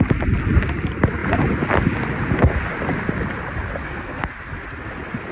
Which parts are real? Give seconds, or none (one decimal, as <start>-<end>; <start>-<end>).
0.0-3.8; 4.3-5.3